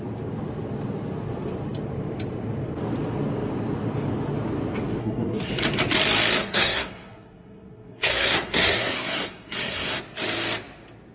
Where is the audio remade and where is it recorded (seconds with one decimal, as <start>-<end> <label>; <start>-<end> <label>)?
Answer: 0.0-5.0 recorded; 5.0-5.5 remade; 5.5-6.4 recorded; 6.4-10.0 remade; 10.0-11.1 recorded

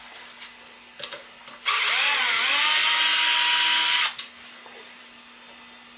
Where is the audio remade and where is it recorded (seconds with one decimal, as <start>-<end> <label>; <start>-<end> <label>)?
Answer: 0.0-6.0 recorded

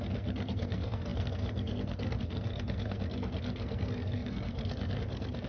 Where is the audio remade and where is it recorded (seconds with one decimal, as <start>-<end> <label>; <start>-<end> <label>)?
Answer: 0.0-5.5 remade

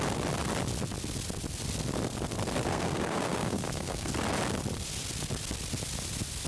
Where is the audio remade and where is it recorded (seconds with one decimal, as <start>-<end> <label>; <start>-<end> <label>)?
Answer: 0.0-2.7 recorded; 2.7-4.1 remade; 4.1-6.5 recorded

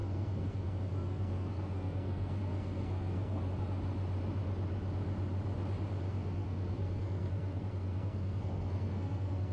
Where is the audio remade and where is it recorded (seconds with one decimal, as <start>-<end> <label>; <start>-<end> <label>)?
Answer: 0.0-3.5 remade; 3.5-6.1 recorded; 6.1-9.5 remade

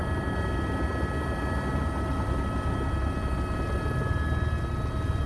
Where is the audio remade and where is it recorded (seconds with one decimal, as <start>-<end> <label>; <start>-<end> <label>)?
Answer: 0.0-5.3 recorded